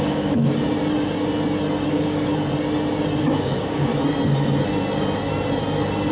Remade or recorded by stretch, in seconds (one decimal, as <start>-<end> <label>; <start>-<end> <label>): 0.0-0.6 remade; 0.6-1.9 recorded; 1.9-2.3 remade; 2.3-3.2 recorded; 3.2-3.9 remade; 3.9-6.1 recorded